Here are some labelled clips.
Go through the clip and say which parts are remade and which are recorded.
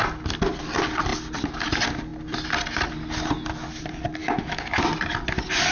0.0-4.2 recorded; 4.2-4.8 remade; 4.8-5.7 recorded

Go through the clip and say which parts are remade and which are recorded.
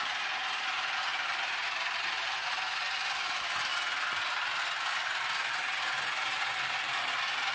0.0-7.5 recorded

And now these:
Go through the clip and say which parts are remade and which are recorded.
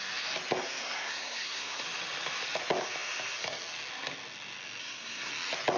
0.0-0.8 recorded; 0.8-1.8 remade; 1.8-4.8 recorded; 4.8-5.3 remade; 5.3-5.8 recorded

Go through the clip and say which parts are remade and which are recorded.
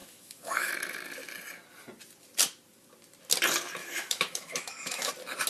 0.0-0.7 remade; 0.7-3.8 recorded; 3.8-5.1 remade; 5.1-5.5 recorded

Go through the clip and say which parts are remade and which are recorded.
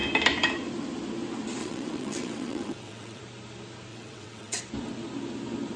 0.0-1.6 recorded; 1.6-3.2 remade; 3.2-3.9 recorded; 3.9-4.6 remade; 4.6-5.8 recorded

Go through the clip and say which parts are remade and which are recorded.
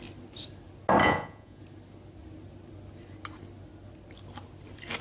0.0-1.0 recorded; 1.0-1.6 remade; 1.6-5.0 recorded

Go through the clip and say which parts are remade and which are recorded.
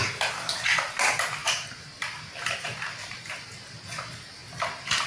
0.0-1.4 recorded; 1.4-3.3 remade; 3.3-5.1 recorded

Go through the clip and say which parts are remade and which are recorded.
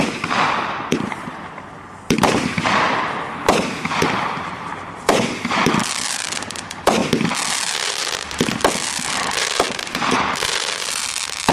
0.0-11.5 recorded